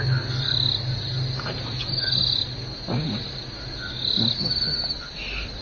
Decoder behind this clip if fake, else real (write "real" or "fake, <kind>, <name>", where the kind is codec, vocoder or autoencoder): real